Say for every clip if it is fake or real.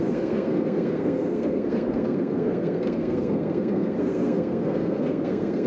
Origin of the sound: fake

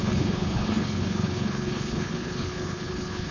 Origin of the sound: fake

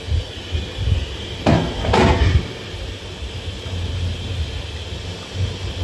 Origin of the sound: real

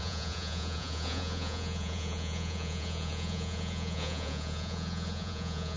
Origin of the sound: fake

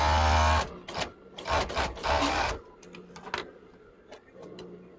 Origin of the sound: real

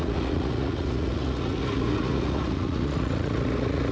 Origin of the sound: fake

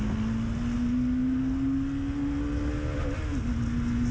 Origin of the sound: real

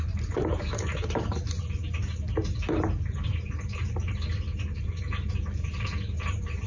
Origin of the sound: fake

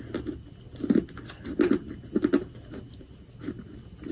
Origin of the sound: real